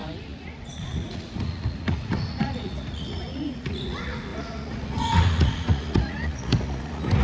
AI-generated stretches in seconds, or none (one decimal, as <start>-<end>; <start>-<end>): 0.0-7.2